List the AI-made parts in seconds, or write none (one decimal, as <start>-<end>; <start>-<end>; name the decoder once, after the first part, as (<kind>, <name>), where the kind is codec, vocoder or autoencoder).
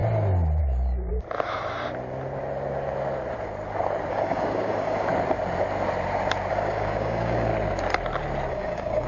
0.6-1.1 (codec, DAC); 4.1-5.1; 6.5-7.5; 8.5-9.1